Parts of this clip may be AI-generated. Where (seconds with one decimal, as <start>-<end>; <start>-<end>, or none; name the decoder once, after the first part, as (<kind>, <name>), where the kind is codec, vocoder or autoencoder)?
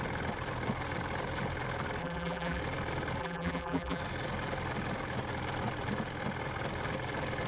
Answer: 2.0-2.6 (vocoder, BigVGAN v2); 3.2-4.0